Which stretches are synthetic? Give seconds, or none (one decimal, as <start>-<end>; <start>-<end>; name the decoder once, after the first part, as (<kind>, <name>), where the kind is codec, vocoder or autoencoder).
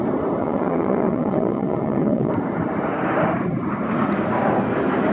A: 0.4-2.3 (vocoder, WaveNeXt)